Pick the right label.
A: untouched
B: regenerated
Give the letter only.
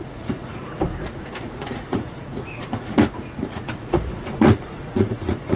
B